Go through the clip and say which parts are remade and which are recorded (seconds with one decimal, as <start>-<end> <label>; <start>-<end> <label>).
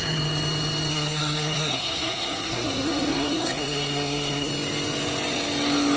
0.0-0.9 recorded; 0.9-4.5 remade; 4.5-6.0 recorded